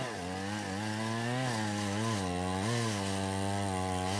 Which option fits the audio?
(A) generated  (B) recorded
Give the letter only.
B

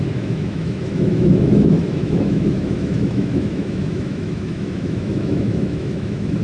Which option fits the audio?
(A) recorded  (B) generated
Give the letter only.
B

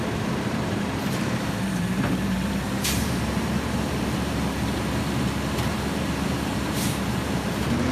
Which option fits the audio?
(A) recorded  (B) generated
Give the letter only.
B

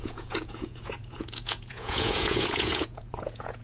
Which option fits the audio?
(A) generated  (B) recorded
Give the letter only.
A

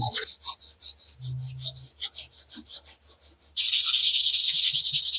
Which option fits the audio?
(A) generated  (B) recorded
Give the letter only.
B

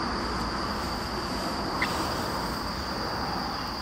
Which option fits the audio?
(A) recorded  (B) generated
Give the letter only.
A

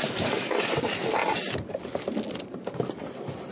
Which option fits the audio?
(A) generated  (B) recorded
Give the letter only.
B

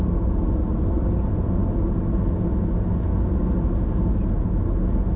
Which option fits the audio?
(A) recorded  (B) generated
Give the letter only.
A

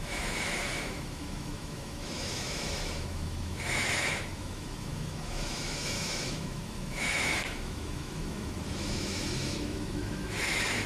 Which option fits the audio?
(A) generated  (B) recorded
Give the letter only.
A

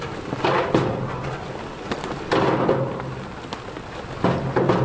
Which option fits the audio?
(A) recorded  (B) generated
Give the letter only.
A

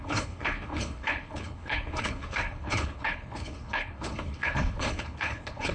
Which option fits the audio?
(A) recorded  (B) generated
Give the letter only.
B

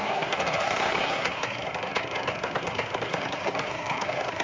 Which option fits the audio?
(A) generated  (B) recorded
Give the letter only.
A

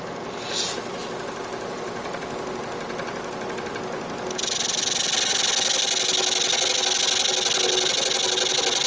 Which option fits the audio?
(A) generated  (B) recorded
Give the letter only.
B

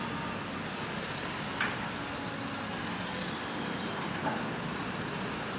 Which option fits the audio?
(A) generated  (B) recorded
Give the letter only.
B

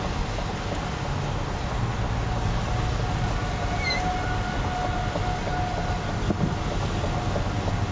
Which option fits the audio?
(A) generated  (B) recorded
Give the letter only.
B